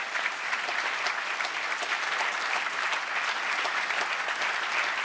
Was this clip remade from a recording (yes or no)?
no